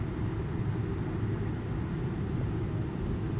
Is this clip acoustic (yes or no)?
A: yes